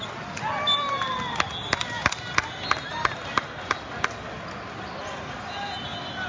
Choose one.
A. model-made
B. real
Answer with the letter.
B